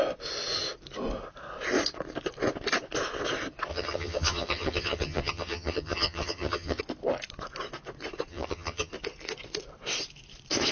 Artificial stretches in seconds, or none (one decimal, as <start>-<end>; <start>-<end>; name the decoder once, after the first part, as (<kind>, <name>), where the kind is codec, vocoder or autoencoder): 3.7-6.8 (vocoder, HiFi-GAN); 8.3-8.9